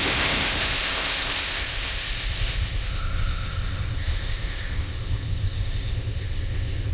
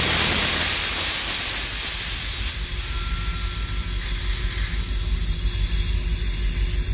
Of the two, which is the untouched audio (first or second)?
second